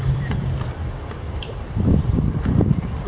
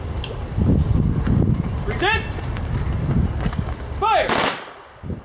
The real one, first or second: second